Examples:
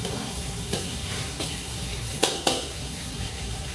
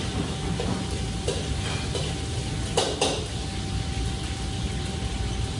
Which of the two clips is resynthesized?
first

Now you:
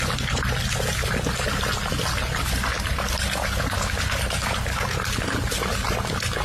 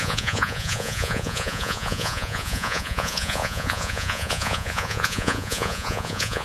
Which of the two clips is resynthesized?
second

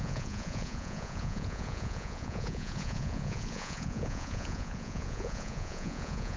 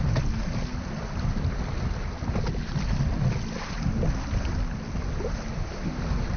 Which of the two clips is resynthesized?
first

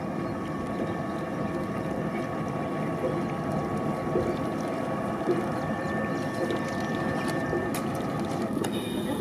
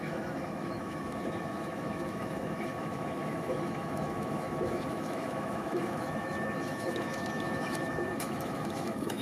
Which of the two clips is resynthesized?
second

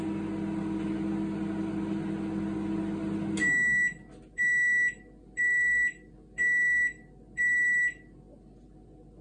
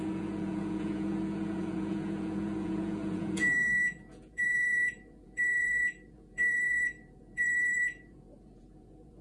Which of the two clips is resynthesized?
second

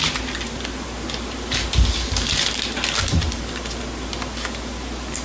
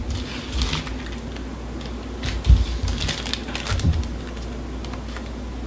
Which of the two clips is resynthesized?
first